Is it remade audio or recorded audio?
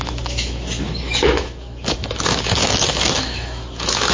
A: remade